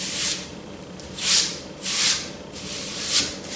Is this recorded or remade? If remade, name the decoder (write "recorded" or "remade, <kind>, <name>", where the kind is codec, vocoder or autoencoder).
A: remade, vocoder, BigVGAN v2